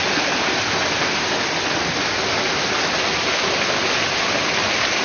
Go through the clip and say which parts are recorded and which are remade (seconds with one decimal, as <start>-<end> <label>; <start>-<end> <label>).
0.0-5.0 recorded